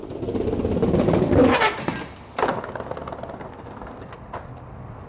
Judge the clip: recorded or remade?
recorded